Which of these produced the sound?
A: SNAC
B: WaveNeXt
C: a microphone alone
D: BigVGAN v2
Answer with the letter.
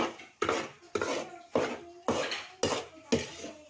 C